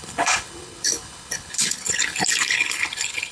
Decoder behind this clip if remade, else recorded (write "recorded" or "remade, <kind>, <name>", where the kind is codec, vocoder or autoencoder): remade, codec, HILCodec